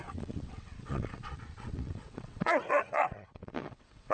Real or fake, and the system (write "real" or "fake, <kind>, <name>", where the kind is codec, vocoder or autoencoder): fake, vocoder, WaveNeXt